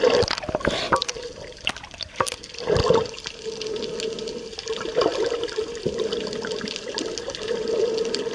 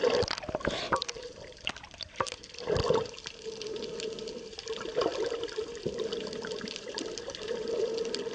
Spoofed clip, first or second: second